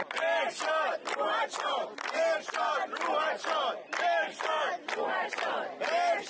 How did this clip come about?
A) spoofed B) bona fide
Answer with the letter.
B